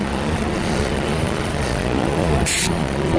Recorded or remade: remade